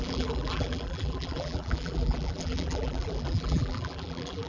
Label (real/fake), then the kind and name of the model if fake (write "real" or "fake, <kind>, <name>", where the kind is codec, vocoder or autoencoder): fake, vocoder, BigVGAN v2